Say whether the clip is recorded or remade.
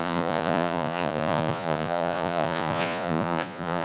remade